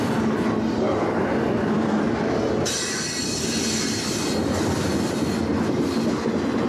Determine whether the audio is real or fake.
real